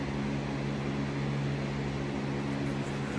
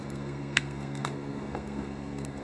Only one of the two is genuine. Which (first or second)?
first